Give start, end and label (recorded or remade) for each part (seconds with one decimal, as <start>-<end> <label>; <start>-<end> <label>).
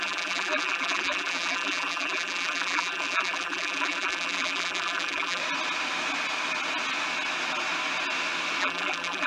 0.0-5.4 remade; 5.4-8.6 recorded; 8.6-9.3 remade